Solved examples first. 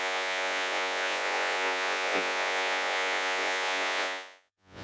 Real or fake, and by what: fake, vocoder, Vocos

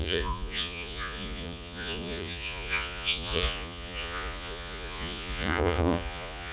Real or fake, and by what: fake, vocoder, Vocos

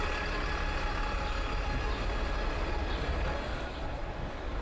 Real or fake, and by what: real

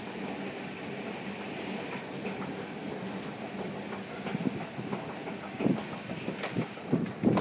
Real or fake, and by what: real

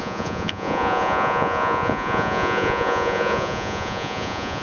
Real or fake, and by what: fake, vocoder, Vocos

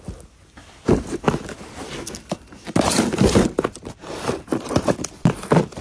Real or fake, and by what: real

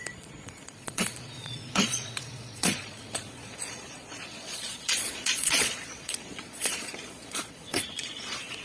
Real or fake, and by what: fake, vocoder, Vocos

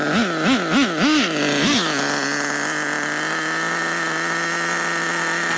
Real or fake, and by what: real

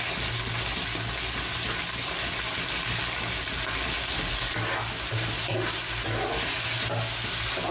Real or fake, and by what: real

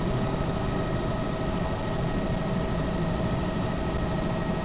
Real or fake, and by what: real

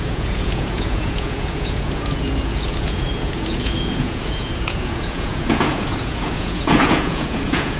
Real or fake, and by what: fake, vocoder, Vocos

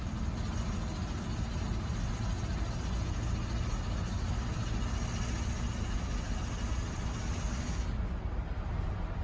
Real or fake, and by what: real